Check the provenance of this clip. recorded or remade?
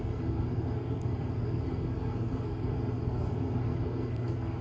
remade